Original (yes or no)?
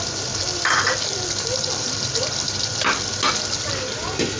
yes